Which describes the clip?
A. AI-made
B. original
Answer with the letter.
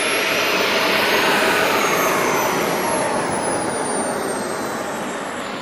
B